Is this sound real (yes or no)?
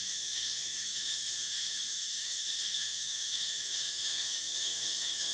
no